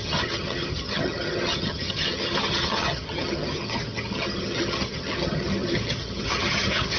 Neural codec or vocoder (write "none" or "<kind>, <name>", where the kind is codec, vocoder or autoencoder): vocoder, HiFi-GAN